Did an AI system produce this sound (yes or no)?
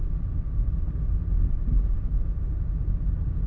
no